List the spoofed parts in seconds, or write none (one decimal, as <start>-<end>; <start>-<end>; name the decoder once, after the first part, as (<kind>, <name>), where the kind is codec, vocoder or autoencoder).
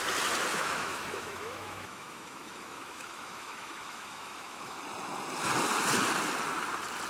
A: 0.5-4.8 (autoencoder, DAC-VAE)